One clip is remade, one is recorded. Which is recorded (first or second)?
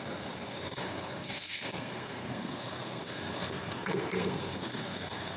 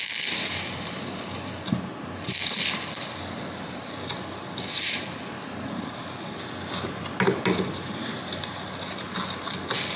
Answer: second